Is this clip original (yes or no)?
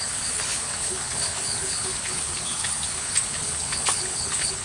no